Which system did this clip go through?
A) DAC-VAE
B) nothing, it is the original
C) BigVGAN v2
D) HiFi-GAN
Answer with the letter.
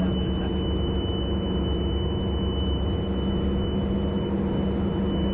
B